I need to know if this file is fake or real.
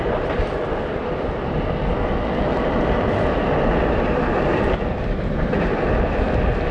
real